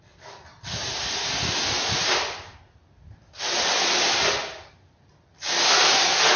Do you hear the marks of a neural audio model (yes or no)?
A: no